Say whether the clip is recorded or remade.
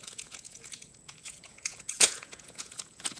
remade